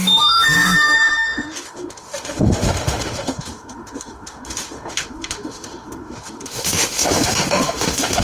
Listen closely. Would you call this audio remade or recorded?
remade